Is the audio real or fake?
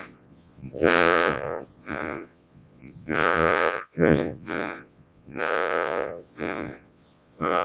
fake